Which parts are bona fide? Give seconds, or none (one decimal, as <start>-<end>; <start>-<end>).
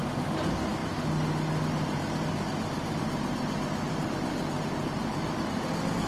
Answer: 0.0-6.1